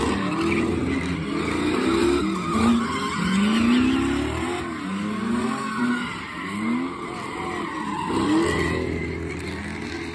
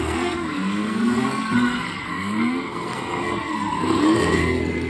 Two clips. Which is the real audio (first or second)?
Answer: first